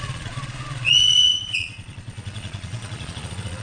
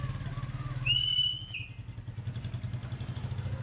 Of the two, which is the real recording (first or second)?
second